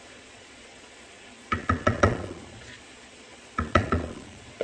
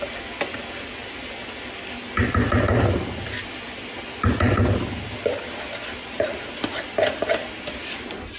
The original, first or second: second